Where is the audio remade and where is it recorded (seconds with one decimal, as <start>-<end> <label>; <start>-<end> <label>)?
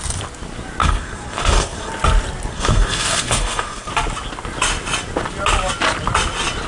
0.0-0.8 recorded; 0.8-1.9 remade; 1.9-2.5 recorded; 2.5-3.9 remade; 3.9-6.7 recorded